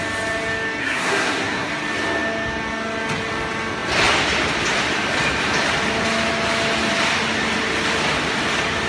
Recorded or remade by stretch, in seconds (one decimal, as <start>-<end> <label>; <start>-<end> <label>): 0.0-0.8 recorded; 0.8-1.7 remade; 1.7-8.9 recorded